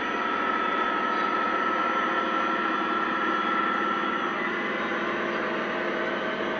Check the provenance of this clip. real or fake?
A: real